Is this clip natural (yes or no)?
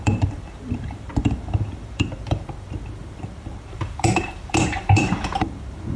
no